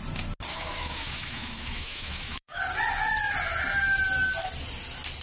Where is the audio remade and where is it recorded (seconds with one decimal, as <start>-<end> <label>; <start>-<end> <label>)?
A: 0.0-0.5 recorded; 0.5-2.6 remade; 2.6-5.2 recorded